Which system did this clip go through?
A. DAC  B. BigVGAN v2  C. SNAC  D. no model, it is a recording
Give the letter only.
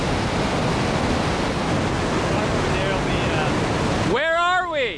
D